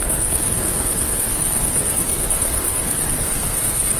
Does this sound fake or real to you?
fake